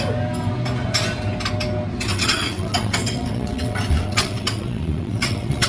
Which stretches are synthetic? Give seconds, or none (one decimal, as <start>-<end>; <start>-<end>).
2.1-5.7